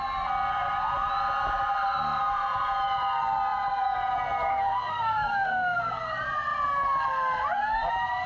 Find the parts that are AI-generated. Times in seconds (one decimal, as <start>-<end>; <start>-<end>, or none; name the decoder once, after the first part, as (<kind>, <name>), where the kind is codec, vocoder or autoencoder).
4.5-5.8 (codec, SNAC)